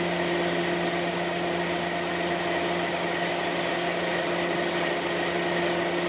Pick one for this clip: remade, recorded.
recorded